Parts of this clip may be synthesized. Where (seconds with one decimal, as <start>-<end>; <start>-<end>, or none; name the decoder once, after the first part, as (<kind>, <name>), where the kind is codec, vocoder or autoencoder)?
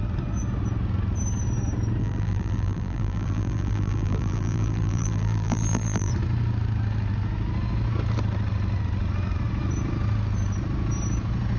2.0-6.1 (vocoder, BigVGAN v2)